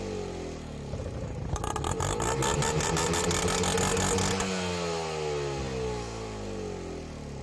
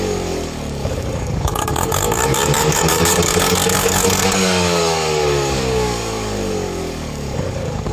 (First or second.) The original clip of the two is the first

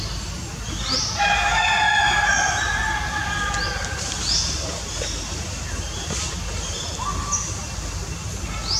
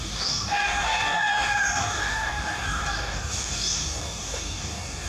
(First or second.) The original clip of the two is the first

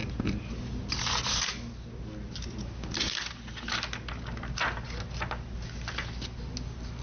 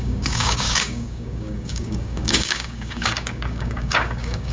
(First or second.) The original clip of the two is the first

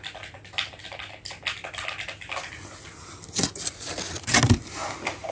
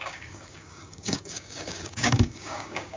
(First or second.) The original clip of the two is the first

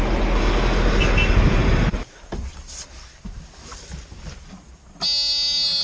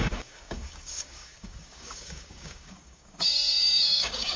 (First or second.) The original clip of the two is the first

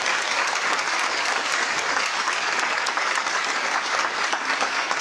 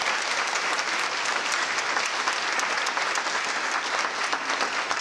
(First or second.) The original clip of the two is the second